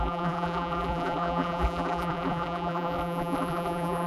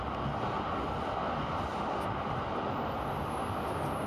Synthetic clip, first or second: first